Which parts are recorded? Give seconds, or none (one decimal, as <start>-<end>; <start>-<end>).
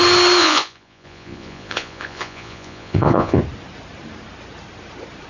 0.0-0.4; 3.4-5.3